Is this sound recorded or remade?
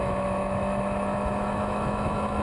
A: remade